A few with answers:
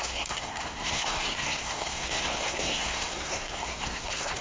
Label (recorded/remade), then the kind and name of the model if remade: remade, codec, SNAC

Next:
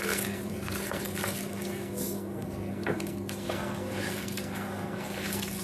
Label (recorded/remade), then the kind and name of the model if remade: remade, codec, SNAC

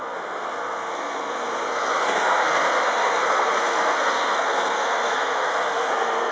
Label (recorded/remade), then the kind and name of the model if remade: remade, codec, SNAC